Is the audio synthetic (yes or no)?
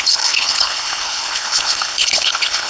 yes